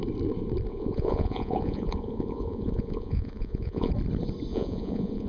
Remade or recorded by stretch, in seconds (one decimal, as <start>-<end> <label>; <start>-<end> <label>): 0.0-0.7 recorded; 0.7-3.9 remade; 3.9-4.5 recorded; 4.5-5.3 remade